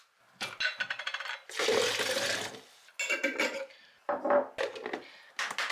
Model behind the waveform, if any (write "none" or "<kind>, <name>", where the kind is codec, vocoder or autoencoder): none